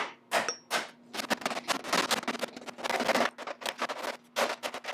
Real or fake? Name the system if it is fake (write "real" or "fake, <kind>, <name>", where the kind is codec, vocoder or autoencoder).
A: real